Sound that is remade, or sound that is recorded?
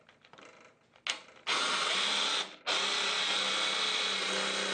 recorded